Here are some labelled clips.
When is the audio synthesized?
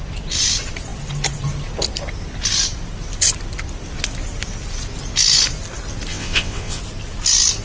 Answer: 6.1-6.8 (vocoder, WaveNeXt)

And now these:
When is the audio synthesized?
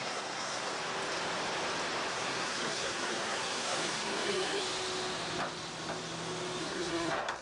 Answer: 0.0-0.7 (codec, SNAC); 2.1-4.6; 6.6-7.4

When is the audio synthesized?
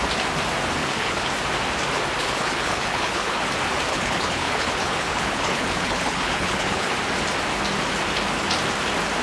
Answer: 0.8-1.3 (codec, HILCodec); 2.2-3.4; 3.9-6.9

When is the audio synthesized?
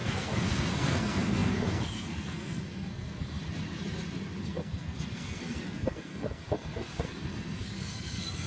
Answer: 0.0-3.4 (codec, SNAC); 4.4-8.5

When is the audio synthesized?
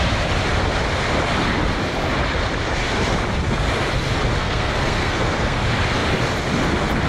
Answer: 4.4-5.6 (codec, SNAC)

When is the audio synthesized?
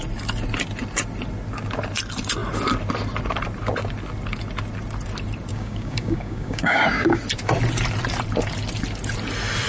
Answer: 5.5-7.2 (codec, DAC)